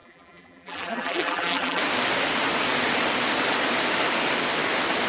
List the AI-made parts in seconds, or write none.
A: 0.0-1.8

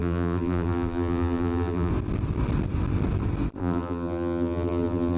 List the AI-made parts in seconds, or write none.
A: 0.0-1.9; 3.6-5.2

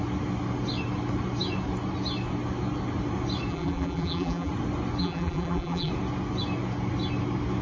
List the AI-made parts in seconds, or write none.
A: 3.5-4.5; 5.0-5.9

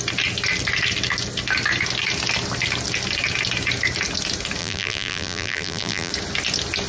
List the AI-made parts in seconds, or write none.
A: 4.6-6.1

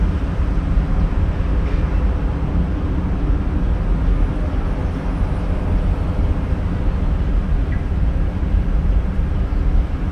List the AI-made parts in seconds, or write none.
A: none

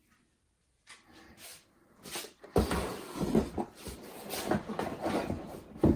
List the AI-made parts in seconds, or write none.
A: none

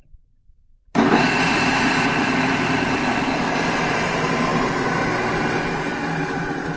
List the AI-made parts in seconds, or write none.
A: 0.0-6.8